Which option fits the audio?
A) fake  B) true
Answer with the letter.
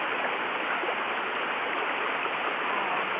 B